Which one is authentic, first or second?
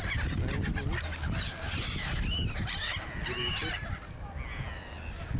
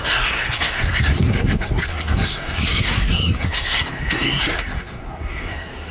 first